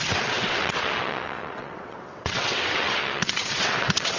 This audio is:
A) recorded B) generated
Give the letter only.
B